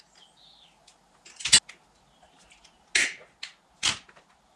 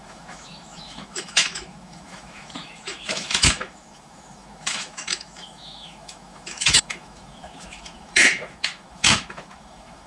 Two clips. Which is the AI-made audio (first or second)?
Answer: second